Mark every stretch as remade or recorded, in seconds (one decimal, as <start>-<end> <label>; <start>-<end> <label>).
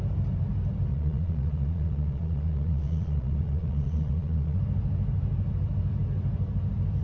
0.0-0.9 recorded; 0.9-4.6 remade; 4.6-7.0 recorded